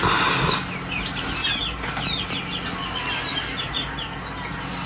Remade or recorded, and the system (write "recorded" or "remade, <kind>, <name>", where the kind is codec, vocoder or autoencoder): recorded